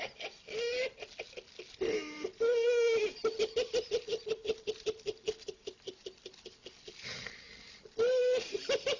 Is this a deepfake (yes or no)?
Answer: no